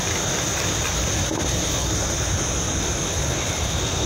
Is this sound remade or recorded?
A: recorded